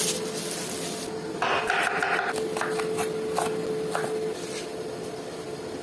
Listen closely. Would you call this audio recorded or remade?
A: recorded